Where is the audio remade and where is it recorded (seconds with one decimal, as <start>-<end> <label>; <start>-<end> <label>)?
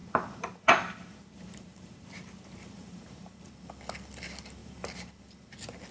0.0-3.5 remade; 3.5-4.6 recorded; 4.6-5.2 remade; 5.2-5.9 recorded